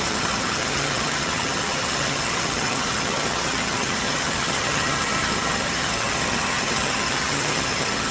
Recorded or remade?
remade